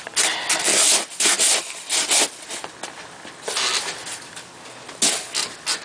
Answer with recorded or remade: recorded